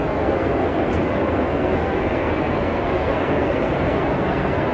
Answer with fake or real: fake